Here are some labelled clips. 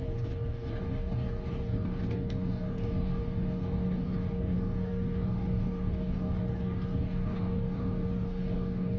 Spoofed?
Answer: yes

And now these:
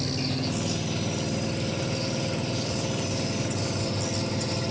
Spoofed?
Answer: no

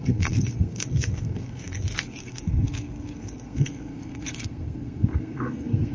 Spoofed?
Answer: yes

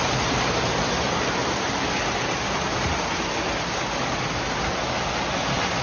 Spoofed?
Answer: no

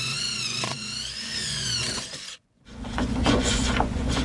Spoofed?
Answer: yes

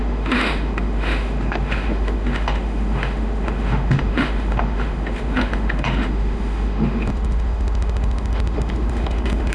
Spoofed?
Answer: yes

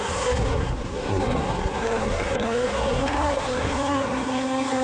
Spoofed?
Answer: yes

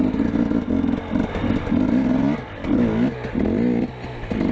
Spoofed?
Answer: no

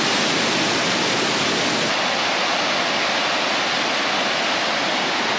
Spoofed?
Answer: no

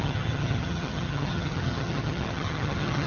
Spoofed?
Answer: yes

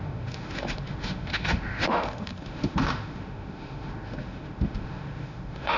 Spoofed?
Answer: yes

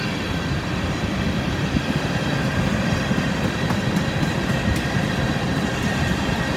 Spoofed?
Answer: no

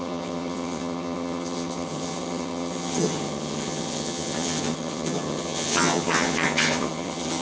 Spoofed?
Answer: yes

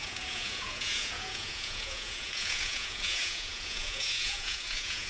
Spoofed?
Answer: yes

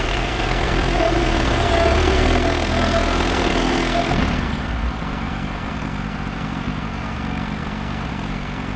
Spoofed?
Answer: yes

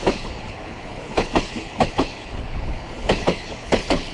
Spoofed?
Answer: yes